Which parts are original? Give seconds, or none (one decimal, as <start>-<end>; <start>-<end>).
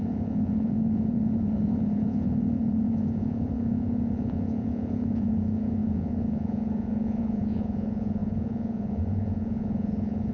none